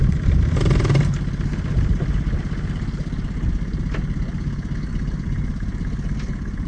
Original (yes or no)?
yes